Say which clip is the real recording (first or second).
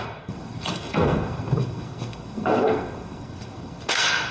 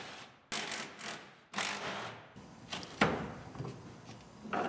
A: second